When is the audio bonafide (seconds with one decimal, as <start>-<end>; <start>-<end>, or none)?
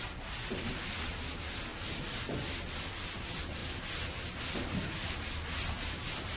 0.0-6.4